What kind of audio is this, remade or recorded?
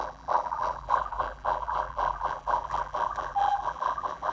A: remade